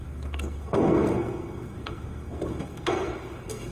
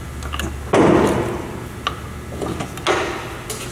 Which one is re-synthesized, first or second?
first